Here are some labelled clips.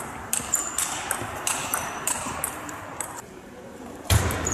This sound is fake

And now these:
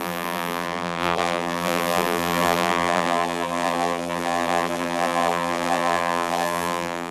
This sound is fake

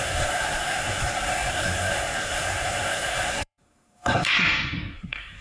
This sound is fake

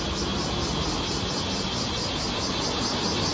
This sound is real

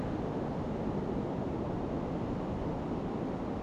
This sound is real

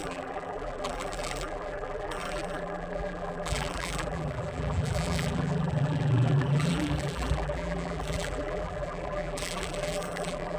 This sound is fake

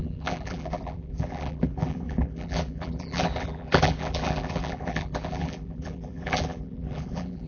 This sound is fake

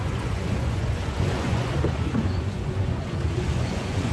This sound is fake